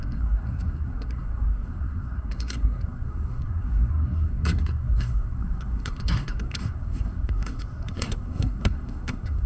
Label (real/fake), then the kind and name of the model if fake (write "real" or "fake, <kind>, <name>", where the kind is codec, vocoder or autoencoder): fake, codec, SNAC